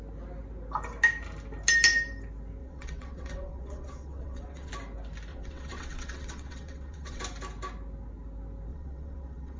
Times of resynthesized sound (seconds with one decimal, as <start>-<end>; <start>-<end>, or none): 2.6-4.7; 5.3-7.2; 8.7-9.6